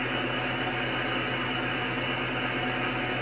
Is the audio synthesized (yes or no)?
no